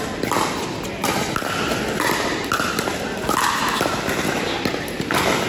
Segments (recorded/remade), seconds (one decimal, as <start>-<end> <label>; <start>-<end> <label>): 0.0-5.5 recorded